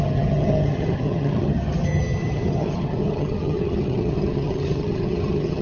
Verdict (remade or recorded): remade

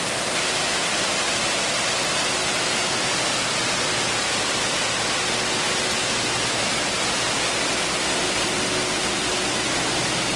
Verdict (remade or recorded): recorded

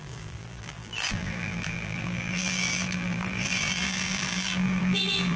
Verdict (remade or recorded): remade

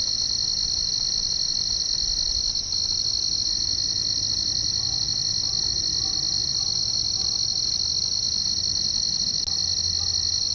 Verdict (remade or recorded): recorded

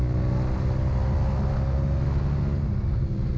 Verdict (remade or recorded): recorded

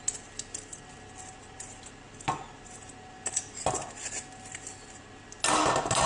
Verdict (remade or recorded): recorded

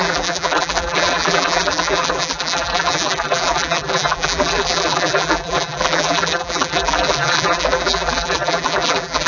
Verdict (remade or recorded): remade